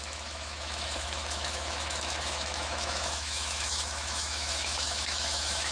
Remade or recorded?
remade